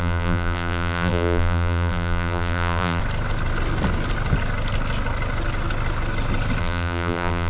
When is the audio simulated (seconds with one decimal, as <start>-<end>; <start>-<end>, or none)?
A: 0.0-3.0; 6.6-7.5